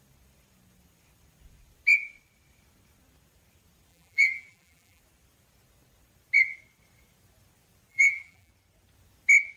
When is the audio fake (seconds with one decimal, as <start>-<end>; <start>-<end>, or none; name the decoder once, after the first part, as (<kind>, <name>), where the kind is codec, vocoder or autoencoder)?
3.9-5.0 (vocoder, BigVGAN v2); 7.9-8.5